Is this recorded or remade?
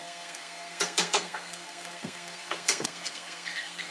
remade